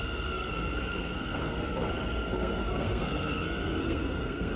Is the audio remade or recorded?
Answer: remade